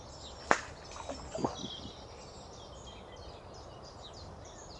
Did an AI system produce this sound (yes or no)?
no